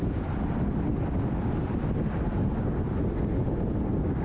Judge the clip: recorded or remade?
recorded